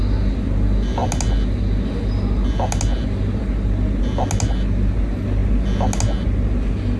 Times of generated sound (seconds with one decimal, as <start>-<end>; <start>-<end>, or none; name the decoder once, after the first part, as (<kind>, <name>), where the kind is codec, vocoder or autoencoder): none